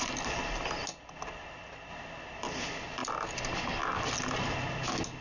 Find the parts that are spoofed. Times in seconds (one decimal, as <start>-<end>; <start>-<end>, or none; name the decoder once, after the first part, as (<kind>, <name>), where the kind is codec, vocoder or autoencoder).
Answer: none